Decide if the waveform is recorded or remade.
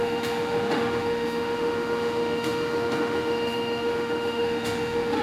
remade